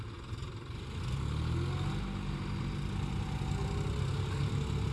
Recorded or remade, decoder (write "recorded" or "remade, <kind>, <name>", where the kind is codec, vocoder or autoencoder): recorded